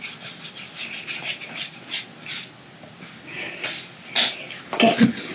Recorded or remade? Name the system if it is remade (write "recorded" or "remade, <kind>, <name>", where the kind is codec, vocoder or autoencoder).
recorded